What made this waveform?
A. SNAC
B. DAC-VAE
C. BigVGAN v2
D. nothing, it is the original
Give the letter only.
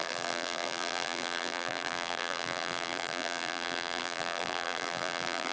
C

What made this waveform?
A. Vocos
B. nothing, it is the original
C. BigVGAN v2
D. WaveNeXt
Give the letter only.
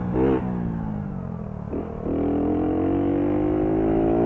B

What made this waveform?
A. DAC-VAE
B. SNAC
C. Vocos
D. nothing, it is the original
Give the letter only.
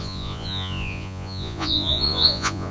C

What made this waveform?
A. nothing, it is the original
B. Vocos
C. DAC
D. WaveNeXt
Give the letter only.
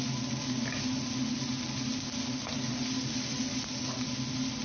A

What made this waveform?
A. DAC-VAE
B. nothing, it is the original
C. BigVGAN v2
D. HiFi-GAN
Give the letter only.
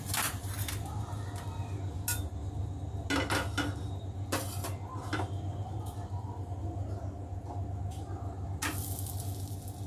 B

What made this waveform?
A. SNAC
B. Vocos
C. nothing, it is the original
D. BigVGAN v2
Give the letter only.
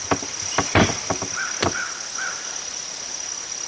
D